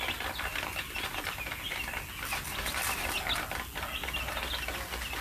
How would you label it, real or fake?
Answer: real